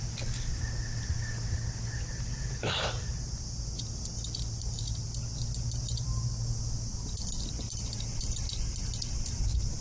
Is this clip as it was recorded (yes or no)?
yes